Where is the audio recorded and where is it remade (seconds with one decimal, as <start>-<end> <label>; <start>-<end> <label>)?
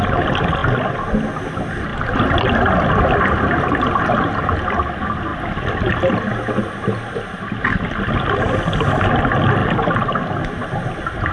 0.0-11.3 recorded